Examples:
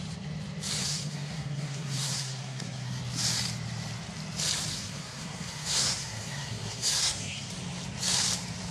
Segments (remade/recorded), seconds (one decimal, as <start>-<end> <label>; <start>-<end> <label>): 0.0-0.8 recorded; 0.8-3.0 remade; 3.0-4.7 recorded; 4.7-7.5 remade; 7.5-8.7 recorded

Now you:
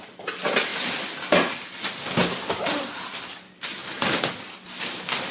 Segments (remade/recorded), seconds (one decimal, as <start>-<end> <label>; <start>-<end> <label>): 0.0-2.2 recorded; 2.2-2.7 remade; 2.7-3.8 recorded; 3.8-4.3 remade; 4.3-5.3 recorded

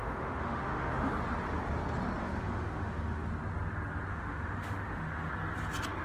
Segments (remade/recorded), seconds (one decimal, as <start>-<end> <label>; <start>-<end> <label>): 0.0-1.1 remade; 1.1-2.2 recorded; 2.2-3.3 remade; 3.3-4.1 recorded; 4.1-5.3 remade; 5.3-6.0 recorded

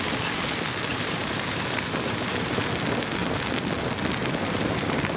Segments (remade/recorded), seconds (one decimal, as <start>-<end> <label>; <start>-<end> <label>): 0.0-0.9 recorded; 0.9-2.7 remade; 2.7-4.2 recorded; 4.2-5.2 remade

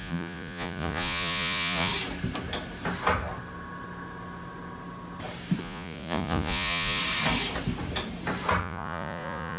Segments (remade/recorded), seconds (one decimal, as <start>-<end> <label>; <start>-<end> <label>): 0.0-1.9 remade; 1.9-5.6 recorded; 5.6-7.0 remade; 7.0-8.6 recorded; 8.6-9.6 remade

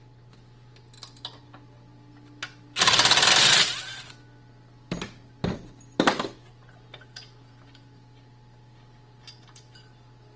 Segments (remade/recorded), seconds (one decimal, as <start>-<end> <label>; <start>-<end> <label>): 0.0-10.4 recorded

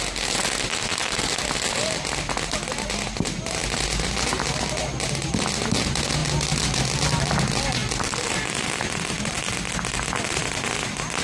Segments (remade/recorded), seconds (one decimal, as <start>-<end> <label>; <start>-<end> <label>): 0.0-7.8 recorded; 7.8-9.4 remade; 9.4-11.2 recorded

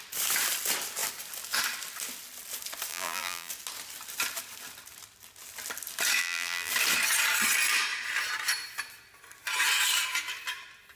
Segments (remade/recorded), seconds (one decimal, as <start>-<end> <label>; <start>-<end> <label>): 0.0-2.9 recorded; 2.9-3.5 remade; 3.5-6.2 recorded; 6.2-6.7 remade; 6.7-11.0 recorded